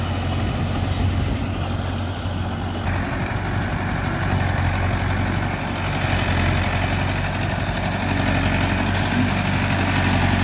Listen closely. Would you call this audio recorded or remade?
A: recorded